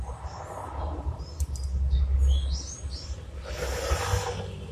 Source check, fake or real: real